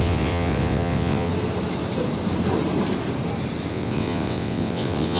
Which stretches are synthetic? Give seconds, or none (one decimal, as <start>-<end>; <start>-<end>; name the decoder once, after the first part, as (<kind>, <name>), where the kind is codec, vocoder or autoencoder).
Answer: 0.0-1.3 (vocoder, WaveNeXt); 3.7-5.2